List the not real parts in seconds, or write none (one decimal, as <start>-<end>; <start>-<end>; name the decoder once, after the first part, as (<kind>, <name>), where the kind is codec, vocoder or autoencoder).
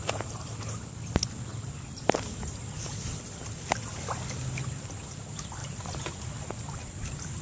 none